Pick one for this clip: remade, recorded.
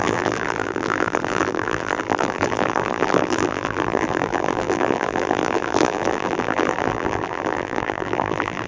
remade